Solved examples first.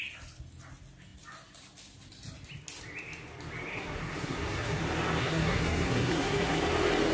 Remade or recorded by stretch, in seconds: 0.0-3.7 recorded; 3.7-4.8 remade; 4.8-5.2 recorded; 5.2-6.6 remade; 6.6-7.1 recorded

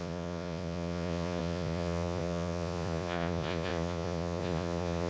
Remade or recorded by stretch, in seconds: 0.0-5.1 remade

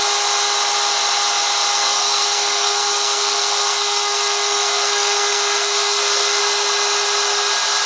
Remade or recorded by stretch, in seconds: 0.0-1.7 recorded; 1.7-6.4 remade; 6.4-7.9 recorded

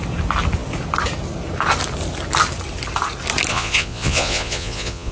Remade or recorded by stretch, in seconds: 0.0-3.5 recorded; 3.5-5.1 remade